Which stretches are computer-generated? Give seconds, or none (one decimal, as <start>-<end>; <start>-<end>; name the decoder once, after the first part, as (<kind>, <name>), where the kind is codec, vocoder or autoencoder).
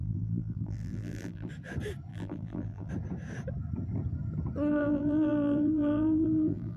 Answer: 0.0-1.5 (vocoder, BigVGAN v2); 2.1-2.9; 4.7-6.8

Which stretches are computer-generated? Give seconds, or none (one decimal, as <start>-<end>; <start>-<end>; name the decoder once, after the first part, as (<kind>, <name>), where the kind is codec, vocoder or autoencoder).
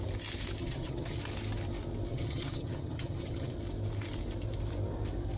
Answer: 0.6-1.2 (vocoder, HiFi-GAN); 2.1-3.5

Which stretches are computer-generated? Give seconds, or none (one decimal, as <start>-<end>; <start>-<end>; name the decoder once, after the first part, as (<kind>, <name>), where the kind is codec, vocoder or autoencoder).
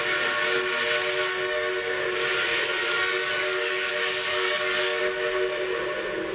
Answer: 1.3-1.9 (codec, DAC); 2.8-3.9; 4.3-5.0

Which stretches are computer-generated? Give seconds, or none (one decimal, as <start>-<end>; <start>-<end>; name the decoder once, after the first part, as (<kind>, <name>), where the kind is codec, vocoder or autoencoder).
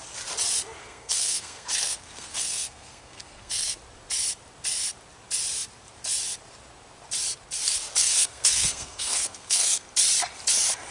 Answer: 0.8-3.7 (codec, SNAC); 8.0-9.9